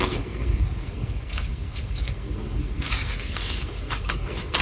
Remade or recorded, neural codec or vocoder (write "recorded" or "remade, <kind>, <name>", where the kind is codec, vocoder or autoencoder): remade, codec, SNAC